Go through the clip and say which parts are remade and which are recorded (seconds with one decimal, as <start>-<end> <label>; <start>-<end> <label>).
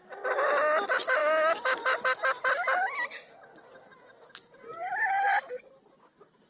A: 0.0-6.5 recorded